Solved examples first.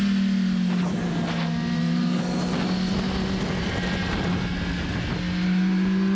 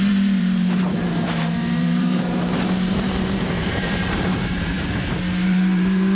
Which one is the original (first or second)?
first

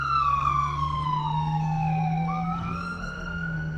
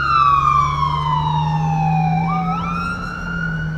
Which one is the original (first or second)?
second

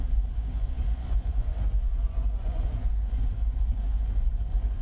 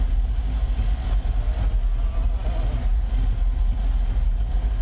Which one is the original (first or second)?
second